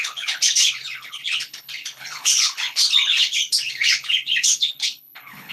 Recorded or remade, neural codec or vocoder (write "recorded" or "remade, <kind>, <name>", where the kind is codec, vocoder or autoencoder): remade, codec, HILCodec